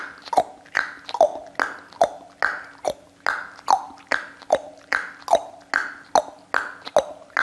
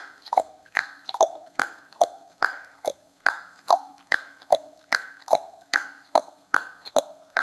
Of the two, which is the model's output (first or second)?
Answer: second